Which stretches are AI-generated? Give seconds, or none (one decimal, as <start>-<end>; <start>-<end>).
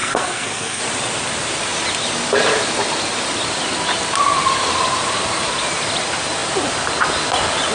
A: 0.0-0.8